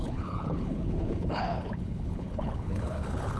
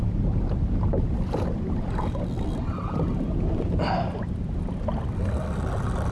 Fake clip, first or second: first